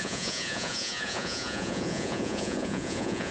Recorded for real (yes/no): no